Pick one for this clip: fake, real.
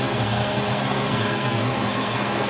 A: fake